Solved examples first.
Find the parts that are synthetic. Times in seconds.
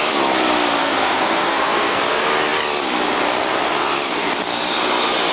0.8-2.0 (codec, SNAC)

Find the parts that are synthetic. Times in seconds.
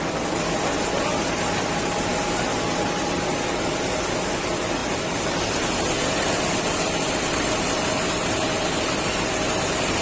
none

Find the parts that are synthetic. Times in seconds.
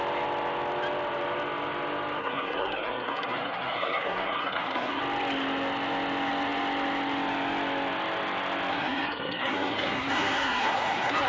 2.2-5.0 (codec, SNAC); 8.7-11.3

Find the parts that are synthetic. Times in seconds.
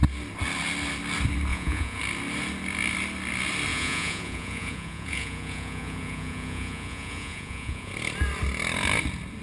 1.5-2.0 (vocoder, Vocos); 3.7-7.9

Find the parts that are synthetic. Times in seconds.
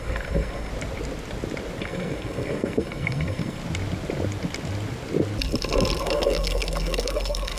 0.0-0.7 (codec, SNAC); 1.8-3.6; 6.0-7.6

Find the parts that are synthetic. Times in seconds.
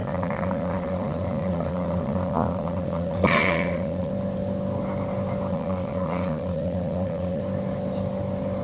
0.0-4.1 (vocoder, Vocos); 5.5-7.4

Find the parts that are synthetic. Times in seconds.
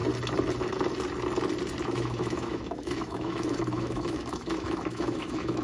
1.8-5.6 (autoencoder, DAC-VAE)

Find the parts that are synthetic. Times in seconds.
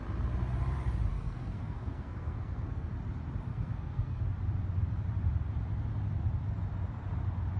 1.1-2.9 (codec, SNAC); 3.5-4.2